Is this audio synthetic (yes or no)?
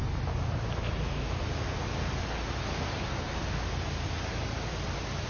no